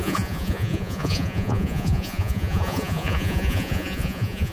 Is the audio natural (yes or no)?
no